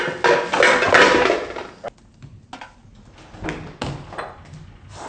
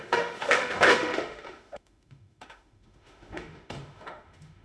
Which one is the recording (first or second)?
first